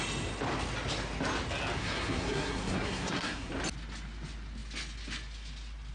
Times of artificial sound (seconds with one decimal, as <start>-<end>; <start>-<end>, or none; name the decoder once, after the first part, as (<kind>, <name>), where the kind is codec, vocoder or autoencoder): 1.8-3.5 (codec, SNAC)